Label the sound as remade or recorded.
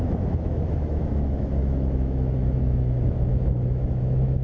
remade